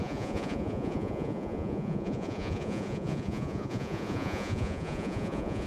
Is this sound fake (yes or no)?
yes